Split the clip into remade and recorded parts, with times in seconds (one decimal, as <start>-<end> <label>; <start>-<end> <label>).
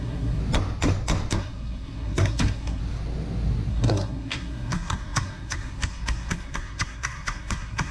0.0-0.4 remade; 0.4-1.3 recorded; 1.3-2.8 remade; 2.8-3.7 recorded; 3.7-7.9 remade